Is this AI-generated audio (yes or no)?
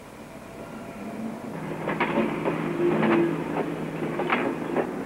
no